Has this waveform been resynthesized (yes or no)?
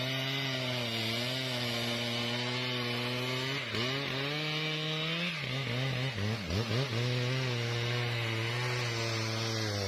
no